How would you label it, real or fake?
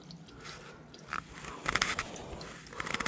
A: real